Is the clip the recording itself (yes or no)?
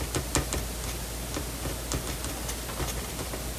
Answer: yes